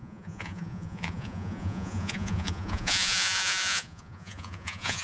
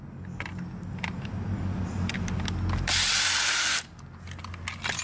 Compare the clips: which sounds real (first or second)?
second